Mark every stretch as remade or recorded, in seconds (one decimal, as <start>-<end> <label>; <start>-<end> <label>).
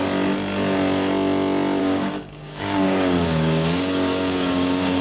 0.0-1.8 recorded; 1.8-5.0 remade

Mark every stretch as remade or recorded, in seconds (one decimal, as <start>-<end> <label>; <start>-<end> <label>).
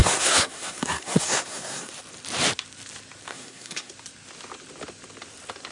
0.0-1.9 remade; 1.9-3.3 recorded; 3.3-3.9 remade; 3.9-5.7 recorded